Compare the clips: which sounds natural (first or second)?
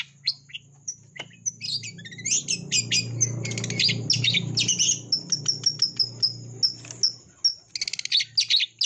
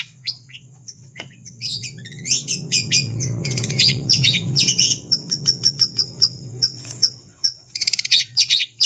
first